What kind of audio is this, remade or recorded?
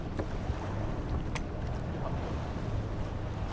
recorded